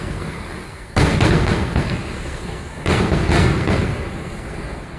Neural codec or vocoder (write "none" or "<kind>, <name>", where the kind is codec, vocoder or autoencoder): codec, SNAC